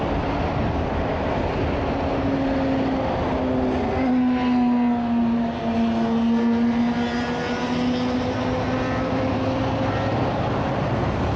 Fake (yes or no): no